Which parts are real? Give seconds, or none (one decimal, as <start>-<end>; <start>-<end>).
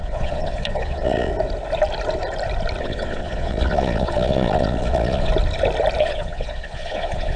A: 1.3-2.8; 5.3-6.0